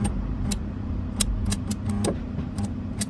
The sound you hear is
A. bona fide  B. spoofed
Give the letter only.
A